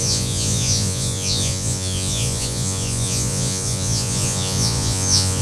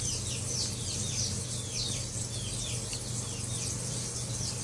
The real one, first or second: second